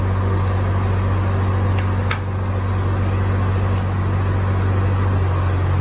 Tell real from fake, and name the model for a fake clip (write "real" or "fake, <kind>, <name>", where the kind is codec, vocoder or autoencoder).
real